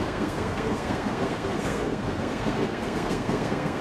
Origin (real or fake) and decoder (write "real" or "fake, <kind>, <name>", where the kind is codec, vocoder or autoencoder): fake, codec, SNAC